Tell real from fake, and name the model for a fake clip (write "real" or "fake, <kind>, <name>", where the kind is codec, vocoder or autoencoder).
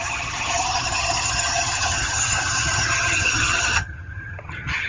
fake, vocoder, HiFi-GAN